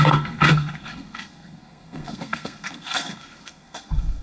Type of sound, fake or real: fake